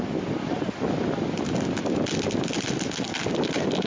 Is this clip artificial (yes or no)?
no